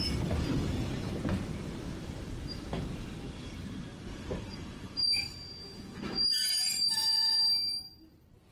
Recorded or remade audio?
remade